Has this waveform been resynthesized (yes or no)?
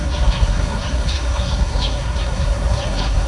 yes